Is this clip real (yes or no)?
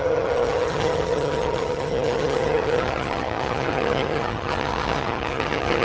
no